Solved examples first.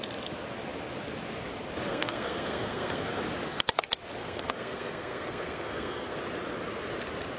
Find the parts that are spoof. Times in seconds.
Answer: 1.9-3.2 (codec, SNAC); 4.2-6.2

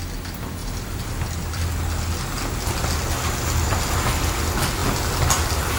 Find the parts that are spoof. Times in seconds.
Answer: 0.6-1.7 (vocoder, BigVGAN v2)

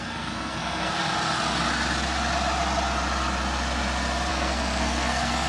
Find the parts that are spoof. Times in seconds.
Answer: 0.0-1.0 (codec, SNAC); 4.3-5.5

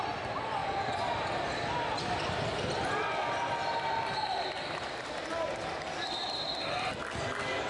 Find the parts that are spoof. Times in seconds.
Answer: none

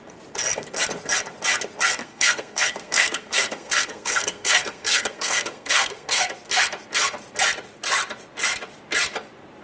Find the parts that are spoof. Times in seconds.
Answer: 2.0-6.2 (codec, SNAC)

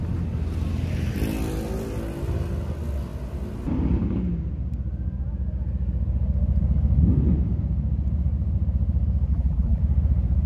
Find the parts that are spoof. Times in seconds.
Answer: 9.3-9.8 (vocoder, BigVGAN v2)